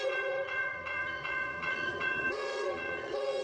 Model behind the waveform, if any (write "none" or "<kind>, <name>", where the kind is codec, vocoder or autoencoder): vocoder, Vocos